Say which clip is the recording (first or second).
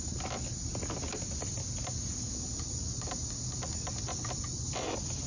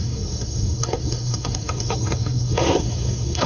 first